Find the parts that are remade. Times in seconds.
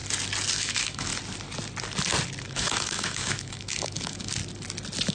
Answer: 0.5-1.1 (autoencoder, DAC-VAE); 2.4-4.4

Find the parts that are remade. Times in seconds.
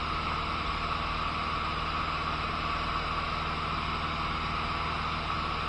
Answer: none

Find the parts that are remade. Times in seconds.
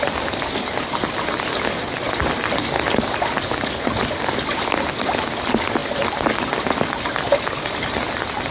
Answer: none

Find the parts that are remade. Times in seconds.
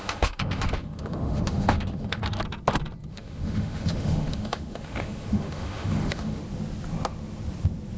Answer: 0.0-2.2 (autoencoder, DAC-VAE); 3.1-6.4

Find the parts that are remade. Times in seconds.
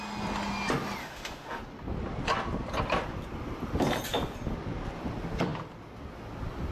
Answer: 1.0-1.6 (autoencoder, DAC-VAE)